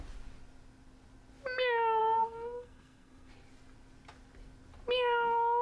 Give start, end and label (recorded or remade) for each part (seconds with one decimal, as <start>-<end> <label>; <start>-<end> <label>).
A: 0.0-2.0 recorded; 2.0-3.3 remade; 3.3-5.6 recorded